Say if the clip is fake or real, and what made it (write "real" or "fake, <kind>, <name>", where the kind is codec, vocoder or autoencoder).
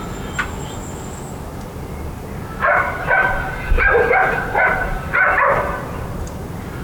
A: real